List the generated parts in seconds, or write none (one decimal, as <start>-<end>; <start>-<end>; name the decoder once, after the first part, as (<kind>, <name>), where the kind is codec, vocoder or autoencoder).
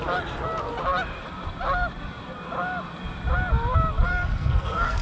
4.1-5.0 (codec, SNAC)